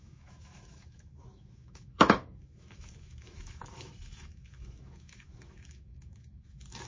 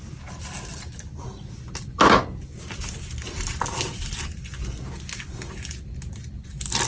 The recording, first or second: second